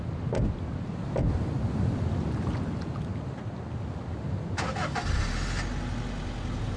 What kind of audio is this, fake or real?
real